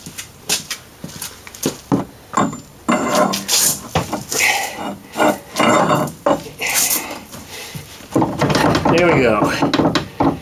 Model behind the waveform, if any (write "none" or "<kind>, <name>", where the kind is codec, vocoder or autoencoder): none